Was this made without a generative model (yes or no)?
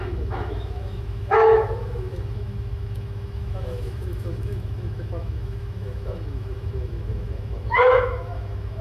no